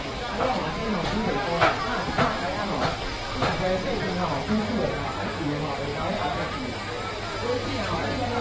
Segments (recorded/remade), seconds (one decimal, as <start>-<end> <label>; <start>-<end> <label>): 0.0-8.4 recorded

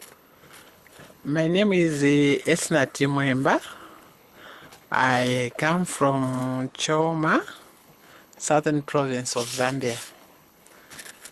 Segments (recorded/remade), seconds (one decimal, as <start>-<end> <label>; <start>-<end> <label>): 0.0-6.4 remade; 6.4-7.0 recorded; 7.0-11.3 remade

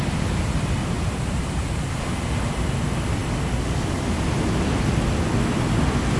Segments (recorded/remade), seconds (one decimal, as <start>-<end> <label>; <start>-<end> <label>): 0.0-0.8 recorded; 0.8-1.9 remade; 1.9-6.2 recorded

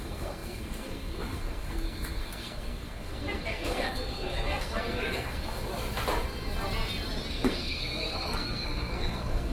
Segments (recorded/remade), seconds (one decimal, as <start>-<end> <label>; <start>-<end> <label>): 0.0-5.7 remade; 5.7-7.3 recorded; 7.3-9.5 remade

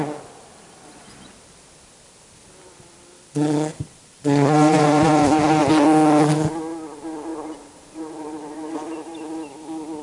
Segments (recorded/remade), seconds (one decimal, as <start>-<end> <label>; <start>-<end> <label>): 0.0-3.7 recorded; 3.7-5.7 remade; 5.7-7.3 recorded; 7.3-9.2 remade; 9.2-10.0 recorded

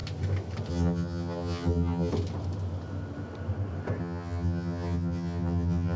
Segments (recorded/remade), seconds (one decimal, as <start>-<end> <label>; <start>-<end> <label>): 0.0-0.7 recorded; 0.7-2.1 remade; 2.1-4.0 recorded; 4.0-6.0 remade

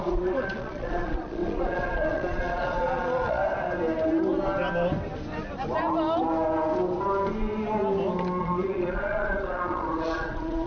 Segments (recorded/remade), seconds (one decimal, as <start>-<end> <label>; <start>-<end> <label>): 0.0-3.4 remade; 3.4-8.4 recorded; 8.4-10.7 remade

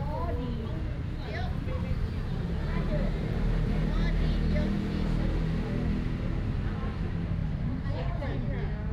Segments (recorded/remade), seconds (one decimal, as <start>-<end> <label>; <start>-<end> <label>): 0.0-8.9 recorded